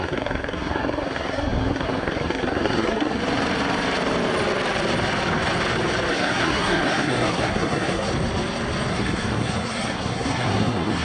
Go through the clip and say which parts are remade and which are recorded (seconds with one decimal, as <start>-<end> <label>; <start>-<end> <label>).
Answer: 0.0-3.2 remade; 3.2-6.1 recorded; 6.1-8.1 remade; 8.1-8.9 recorded; 8.9-11.0 remade